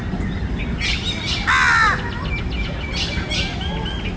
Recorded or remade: recorded